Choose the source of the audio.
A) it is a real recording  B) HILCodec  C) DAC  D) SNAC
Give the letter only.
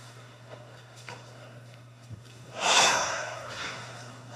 D